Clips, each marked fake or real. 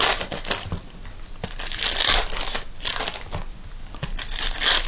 real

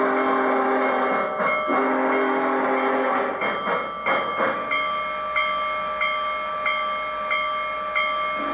real